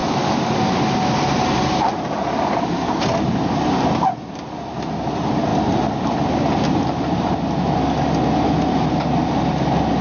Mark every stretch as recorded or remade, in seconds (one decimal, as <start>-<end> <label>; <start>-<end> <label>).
0.0-10.0 recorded